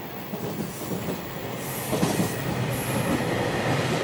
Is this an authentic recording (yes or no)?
yes